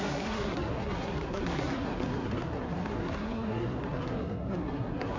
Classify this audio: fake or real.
fake